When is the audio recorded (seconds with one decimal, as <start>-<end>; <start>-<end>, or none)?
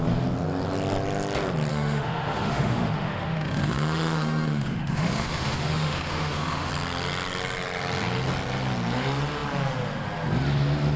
0.0-1.7; 6.7-11.0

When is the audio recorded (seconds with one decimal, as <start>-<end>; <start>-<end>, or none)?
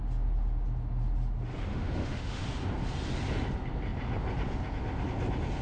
0.0-1.7; 2.4-5.6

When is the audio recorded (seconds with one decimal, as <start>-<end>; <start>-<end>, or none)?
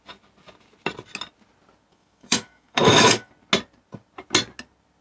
0.0-1.9; 3.3-5.0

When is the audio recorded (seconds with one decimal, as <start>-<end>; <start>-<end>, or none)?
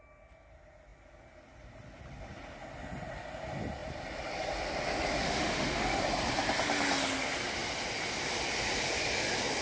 0.0-5.2; 6.0-9.6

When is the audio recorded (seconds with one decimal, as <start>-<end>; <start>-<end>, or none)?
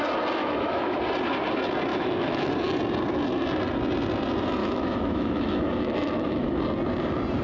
0.0-0.4; 1.0-1.9; 2.5-4.6; 6.6-7.4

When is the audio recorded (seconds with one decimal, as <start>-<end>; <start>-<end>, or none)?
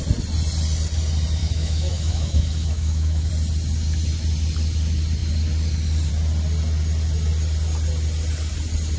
0.0-1.4; 3.3-9.0